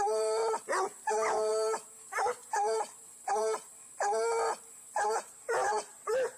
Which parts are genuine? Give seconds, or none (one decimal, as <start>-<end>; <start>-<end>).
0.4-1.1; 3.7-5.2